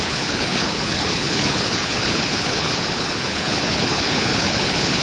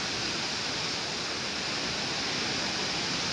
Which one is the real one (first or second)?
second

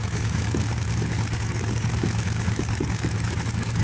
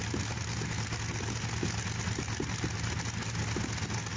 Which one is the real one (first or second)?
second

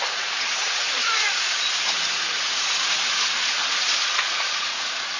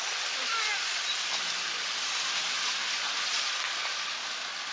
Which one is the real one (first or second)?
second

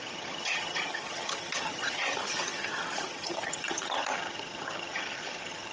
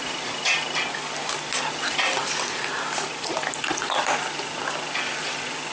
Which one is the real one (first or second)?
second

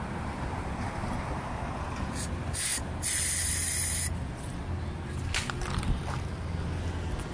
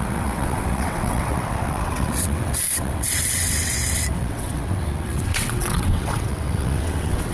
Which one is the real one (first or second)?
first